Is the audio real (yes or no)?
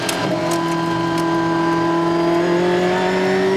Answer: yes